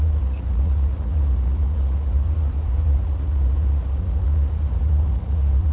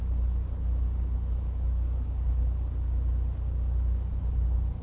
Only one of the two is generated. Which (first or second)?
first